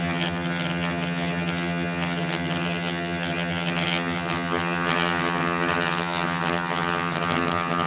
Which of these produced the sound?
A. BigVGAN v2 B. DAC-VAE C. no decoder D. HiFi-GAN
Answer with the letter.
D